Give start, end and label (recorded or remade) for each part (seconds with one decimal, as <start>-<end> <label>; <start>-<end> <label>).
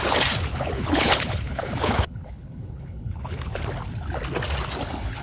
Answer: 0.0-0.5 recorded; 0.5-3.6 remade; 3.6-5.2 recorded